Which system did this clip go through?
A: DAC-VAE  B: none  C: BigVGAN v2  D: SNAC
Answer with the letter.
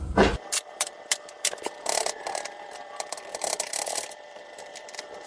C